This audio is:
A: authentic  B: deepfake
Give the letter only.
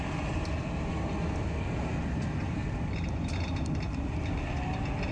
A